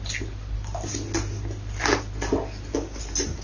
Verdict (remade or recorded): recorded